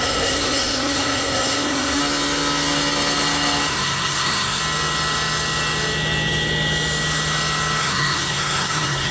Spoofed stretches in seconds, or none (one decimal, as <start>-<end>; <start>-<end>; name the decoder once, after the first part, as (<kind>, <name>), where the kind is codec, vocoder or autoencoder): 0.0-2.0 (codec, SNAC); 3.7-4.6; 7.8-9.1